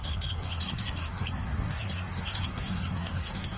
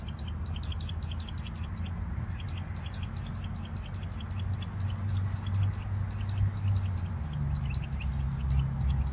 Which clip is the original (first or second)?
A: second